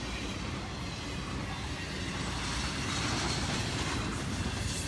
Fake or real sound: real